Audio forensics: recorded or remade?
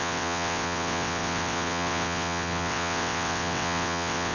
remade